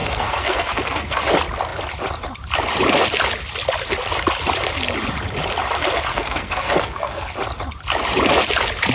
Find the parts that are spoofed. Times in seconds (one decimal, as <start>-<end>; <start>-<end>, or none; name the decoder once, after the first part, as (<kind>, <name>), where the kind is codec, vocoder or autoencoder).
0.0-1.2 (codec, SNAC); 6.1-7.3